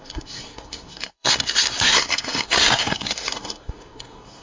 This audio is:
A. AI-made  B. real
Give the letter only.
A